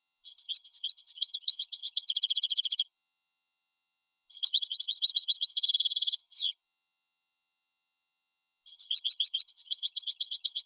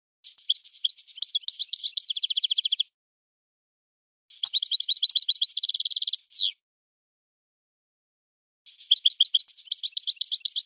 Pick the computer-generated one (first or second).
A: first